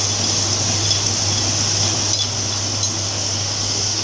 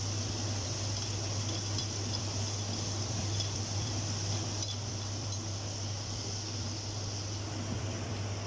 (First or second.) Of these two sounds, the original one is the first